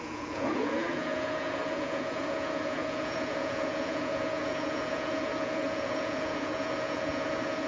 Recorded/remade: remade